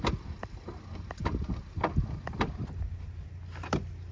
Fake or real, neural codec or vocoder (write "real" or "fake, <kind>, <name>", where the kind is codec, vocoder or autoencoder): real